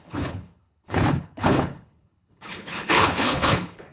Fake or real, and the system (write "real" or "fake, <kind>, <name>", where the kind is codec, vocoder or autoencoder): fake, codec, HILCodec